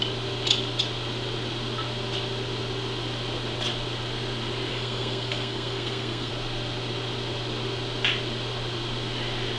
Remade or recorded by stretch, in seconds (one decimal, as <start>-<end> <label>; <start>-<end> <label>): 0.0-4.7 recorded; 4.7-6.3 remade; 6.3-9.6 recorded